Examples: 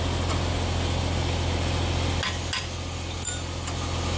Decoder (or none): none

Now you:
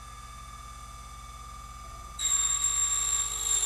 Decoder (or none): none